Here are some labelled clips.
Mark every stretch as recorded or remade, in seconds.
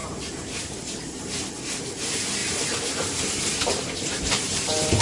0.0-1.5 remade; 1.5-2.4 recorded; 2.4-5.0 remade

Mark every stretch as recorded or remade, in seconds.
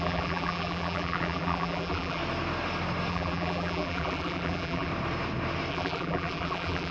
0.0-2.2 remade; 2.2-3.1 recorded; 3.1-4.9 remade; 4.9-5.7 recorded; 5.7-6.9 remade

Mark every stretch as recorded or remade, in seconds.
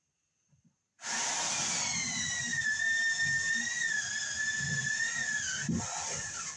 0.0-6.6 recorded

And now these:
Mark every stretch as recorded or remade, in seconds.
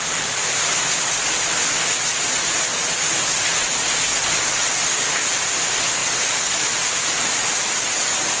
0.0-6.0 recorded; 6.0-7.7 remade; 7.7-8.4 recorded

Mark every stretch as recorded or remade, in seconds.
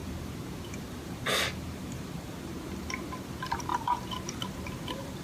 0.0-5.2 remade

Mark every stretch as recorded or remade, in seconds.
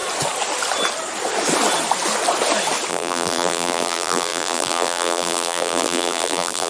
0.0-2.9 recorded; 2.9-6.7 remade